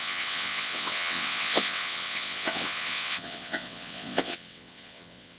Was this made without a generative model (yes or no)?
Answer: no